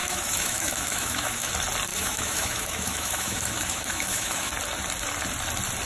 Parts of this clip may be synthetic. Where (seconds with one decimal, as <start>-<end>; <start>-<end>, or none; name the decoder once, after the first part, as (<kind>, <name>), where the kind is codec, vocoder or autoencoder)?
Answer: 0.0-1.5 (autoencoder, DAC-VAE); 1.9-4.5